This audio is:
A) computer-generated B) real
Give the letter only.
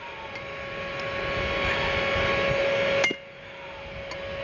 B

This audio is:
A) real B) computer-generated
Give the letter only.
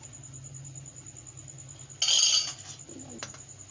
A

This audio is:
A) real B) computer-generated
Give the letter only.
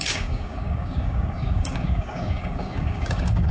B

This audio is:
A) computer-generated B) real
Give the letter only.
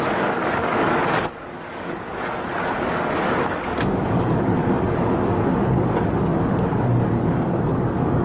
A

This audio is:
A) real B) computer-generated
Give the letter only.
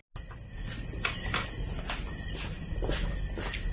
A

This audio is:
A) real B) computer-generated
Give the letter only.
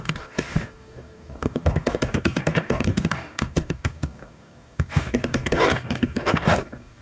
B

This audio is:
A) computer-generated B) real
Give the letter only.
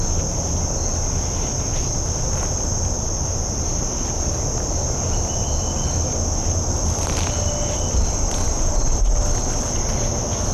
B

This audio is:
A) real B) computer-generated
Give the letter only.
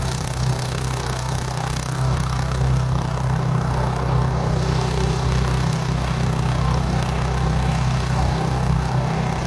B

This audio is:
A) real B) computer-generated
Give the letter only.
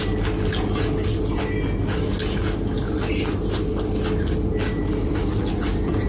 A